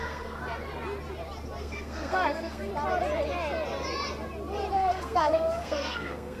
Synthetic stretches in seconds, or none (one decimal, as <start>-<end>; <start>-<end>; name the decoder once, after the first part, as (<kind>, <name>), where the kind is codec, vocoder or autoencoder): 0.0-0.4 (codec, SNAC); 1.6-2.7; 4.7-6.4